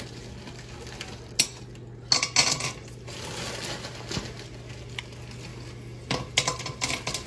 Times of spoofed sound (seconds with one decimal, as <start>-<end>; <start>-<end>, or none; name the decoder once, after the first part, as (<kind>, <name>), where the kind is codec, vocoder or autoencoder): none